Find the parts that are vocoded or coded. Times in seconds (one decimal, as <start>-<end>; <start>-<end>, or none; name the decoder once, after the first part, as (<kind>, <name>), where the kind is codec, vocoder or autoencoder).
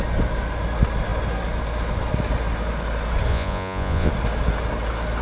3.3-4.1 (vocoder, Vocos)